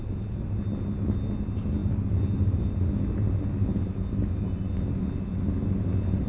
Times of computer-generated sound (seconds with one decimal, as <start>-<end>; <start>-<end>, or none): none